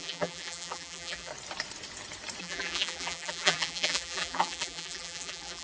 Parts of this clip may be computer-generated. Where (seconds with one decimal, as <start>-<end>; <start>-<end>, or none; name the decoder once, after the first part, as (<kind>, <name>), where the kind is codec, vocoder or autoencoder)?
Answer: 0.0-1.3 (vocoder, BigVGAN v2); 2.4-5.6

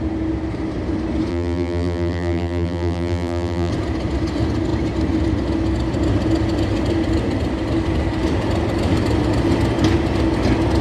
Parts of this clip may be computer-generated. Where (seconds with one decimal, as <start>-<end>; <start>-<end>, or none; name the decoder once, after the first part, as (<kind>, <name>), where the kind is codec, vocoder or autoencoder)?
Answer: 1.3-3.7 (vocoder, BigVGAN v2)

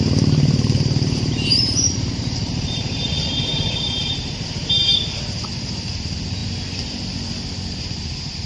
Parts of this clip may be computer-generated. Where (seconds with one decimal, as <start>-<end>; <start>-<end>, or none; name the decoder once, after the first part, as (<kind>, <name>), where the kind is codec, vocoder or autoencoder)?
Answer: 0.0-6.4 (vocoder, BigVGAN v2); 7.8-8.5

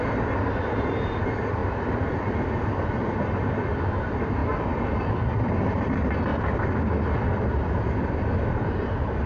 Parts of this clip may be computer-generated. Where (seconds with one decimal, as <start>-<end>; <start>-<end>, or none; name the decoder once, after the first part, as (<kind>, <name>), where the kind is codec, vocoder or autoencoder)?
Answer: none

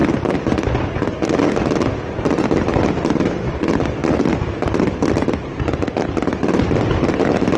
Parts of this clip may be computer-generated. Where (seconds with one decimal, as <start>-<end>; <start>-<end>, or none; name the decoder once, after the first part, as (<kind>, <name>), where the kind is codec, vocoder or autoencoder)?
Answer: none